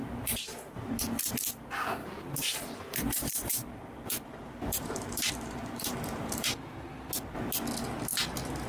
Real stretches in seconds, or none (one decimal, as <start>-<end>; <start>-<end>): 0.9-2.0; 7.1-8.7